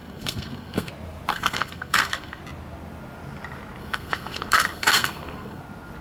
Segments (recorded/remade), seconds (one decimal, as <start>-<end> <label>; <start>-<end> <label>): 0.0-0.9 remade; 0.9-1.3 recorded; 1.3-2.4 remade; 2.4-3.8 recorded; 3.8-5.6 remade; 5.6-6.0 recorded